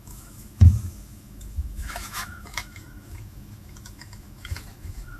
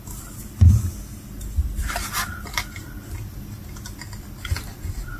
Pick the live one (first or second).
second